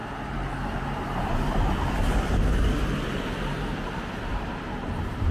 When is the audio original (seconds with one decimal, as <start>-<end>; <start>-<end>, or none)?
none